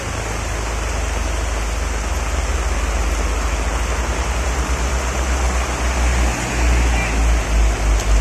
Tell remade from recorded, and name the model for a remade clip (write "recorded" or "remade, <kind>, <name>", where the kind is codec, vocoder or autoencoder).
recorded